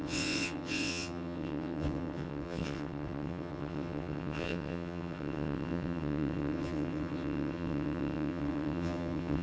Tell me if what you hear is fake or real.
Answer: fake